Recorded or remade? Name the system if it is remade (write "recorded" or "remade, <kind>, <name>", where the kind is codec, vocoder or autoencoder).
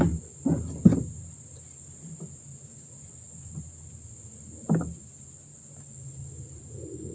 recorded